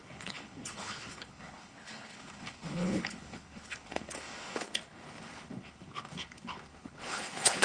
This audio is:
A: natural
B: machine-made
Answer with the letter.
B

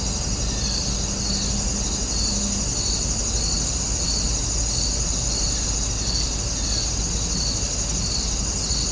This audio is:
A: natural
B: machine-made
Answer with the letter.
A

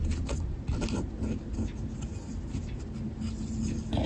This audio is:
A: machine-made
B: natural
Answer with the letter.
B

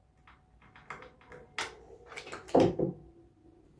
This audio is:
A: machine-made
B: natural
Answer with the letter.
B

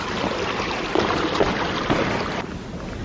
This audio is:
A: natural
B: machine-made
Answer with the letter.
A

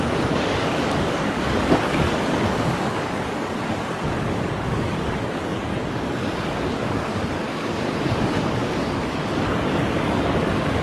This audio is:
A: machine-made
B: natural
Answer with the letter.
A